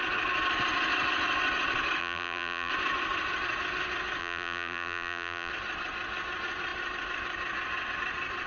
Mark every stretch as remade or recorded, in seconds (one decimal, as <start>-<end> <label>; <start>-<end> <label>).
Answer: 0.0-2.0 recorded; 2.0-2.7 remade; 2.7-4.2 recorded; 4.2-5.5 remade; 5.5-8.5 recorded